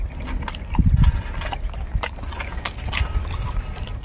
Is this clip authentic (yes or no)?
yes